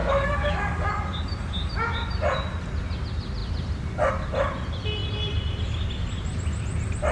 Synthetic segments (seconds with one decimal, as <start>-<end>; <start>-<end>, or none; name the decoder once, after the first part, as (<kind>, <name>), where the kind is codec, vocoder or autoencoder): 0.0-0.9 (codec, DAC)

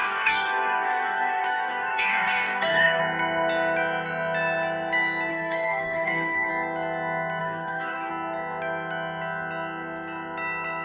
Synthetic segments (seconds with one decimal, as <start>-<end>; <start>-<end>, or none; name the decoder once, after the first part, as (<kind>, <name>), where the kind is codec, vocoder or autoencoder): 0.0-3.0 (codec, DAC); 5.3-6.5; 7.4-8.1

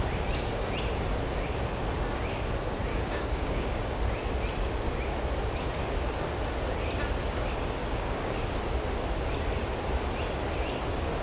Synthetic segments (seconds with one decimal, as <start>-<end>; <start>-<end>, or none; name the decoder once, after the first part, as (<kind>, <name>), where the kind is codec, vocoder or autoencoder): 2.9-4.0 (codec, DAC); 7.8-8.4

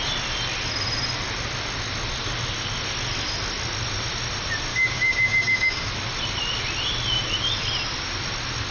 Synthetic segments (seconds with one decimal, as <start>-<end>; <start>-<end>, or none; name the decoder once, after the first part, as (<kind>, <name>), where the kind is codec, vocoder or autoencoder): 4.7-5.9 (codec, DAC)

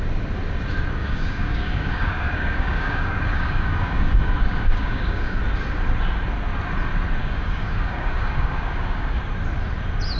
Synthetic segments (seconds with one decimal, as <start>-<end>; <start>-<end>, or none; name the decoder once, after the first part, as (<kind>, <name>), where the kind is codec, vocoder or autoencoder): 1.0-5.4 (codec, DAC); 7.2-9.2

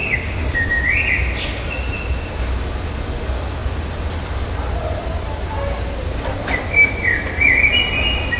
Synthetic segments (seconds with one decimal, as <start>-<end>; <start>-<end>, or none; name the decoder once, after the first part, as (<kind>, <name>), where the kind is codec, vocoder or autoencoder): 0.0-0.8 (codec, DAC)